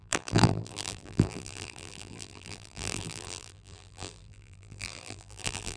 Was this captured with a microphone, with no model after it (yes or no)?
no